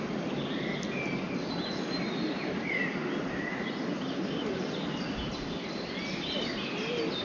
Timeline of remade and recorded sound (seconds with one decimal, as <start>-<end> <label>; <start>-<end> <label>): 0.0-7.2 recorded

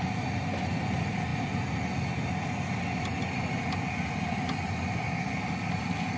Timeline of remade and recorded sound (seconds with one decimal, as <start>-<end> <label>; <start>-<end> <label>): 0.0-6.2 recorded